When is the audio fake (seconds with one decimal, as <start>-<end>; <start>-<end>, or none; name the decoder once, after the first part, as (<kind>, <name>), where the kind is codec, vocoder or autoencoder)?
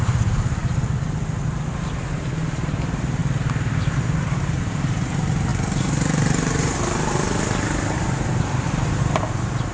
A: 0.0-0.6 (vocoder, BigVGAN v2); 1.7-9.7